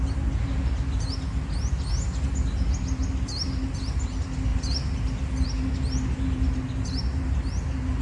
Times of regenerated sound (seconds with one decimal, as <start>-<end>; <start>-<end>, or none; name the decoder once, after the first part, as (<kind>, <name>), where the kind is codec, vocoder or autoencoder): none